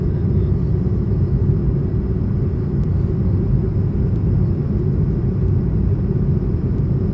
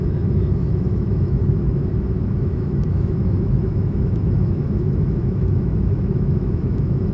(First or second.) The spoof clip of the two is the second